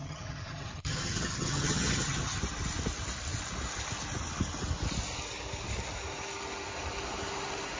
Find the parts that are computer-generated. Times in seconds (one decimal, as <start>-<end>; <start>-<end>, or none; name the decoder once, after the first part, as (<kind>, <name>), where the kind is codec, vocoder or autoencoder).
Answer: 0.0-2.4 (vocoder, HiFi-GAN)